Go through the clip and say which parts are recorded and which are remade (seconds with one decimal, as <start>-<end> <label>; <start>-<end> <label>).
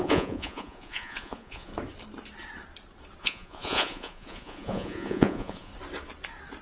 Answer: 0.0-1.7 remade; 1.7-3.2 recorded; 3.2-5.7 remade; 5.7-6.6 recorded